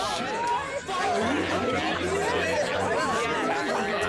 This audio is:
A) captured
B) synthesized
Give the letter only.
A